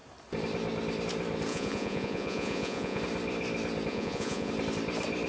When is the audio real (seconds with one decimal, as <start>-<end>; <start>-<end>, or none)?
0.0-1.5; 3.0-3.9; 4.5-5.3